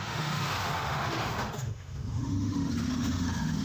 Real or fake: fake